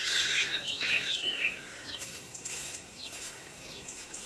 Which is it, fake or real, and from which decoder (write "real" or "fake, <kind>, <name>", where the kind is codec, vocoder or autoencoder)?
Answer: fake, codec, SNAC